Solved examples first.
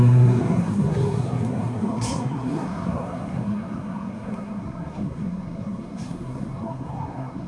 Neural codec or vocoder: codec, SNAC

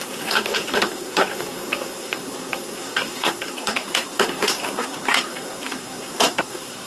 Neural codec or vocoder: codec, SNAC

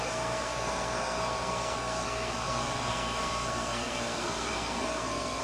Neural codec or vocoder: codec, SNAC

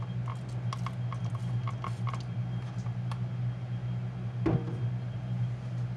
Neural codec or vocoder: none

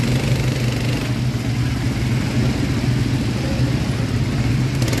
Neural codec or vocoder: none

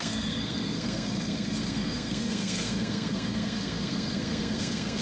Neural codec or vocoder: codec, SNAC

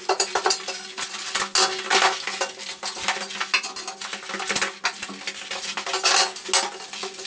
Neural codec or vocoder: none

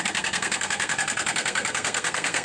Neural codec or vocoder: codec, SNAC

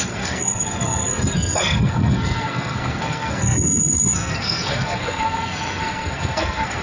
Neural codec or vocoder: codec, SNAC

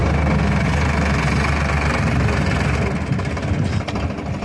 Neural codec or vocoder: none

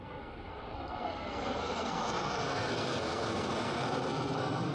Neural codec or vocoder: codec, SNAC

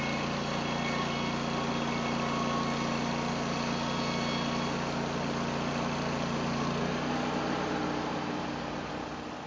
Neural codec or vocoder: none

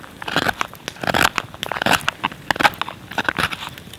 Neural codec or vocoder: none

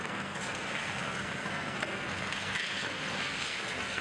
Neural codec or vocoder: codec, SNAC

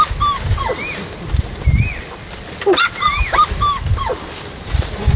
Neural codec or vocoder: none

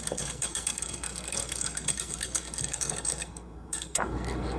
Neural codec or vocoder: codec, SNAC